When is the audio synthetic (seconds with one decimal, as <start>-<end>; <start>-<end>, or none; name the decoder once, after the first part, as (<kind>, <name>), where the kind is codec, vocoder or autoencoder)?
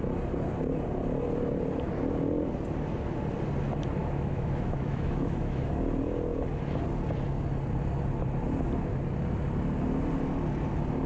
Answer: 4.0-5.8 (autoencoder, DAC-VAE)